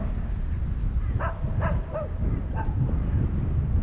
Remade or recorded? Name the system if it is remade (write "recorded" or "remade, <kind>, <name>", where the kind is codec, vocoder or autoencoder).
recorded